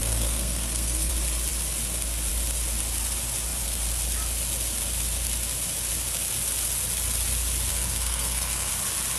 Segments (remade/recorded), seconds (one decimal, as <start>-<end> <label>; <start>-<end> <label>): 0.0-1.1 remade; 1.1-7.7 recorded; 7.7-8.7 remade; 8.7-9.2 recorded